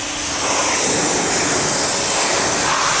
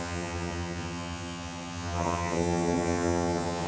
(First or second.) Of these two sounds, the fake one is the second